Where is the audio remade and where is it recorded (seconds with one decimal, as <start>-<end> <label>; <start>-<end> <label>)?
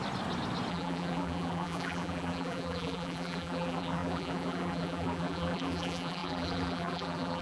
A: 0.0-0.7 recorded; 0.7-7.4 remade